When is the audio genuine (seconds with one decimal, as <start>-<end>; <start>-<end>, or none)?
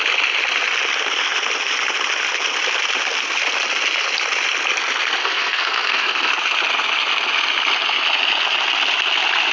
0.0-5.2; 6.3-9.5